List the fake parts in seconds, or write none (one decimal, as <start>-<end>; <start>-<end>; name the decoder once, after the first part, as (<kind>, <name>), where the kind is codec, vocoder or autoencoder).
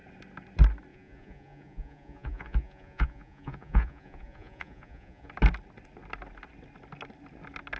0.9-5.3 (vocoder, Vocos)